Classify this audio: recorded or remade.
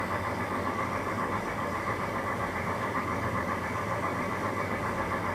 remade